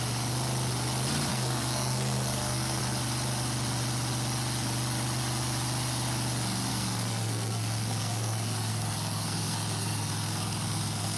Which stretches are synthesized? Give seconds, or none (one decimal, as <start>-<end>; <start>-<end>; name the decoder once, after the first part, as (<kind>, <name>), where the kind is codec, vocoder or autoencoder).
1.3-2.8 (codec, SNAC); 6.7-11.2